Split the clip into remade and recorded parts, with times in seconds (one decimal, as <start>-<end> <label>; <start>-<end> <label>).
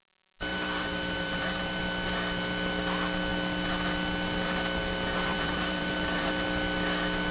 0.0-0.5 recorded; 0.5-1.8 remade; 1.8-5.3 recorded; 5.3-6.3 remade; 6.3-7.3 recorded